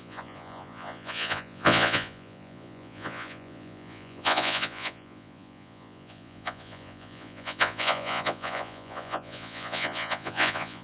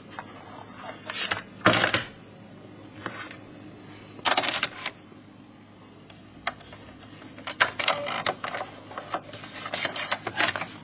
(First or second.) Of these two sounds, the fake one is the first